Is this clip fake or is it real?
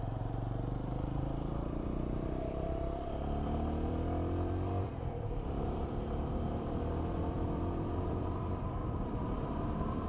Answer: fake